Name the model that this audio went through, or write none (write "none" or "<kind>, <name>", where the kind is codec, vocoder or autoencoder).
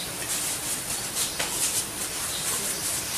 none